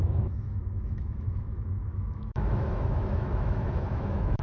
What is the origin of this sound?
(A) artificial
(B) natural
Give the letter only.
A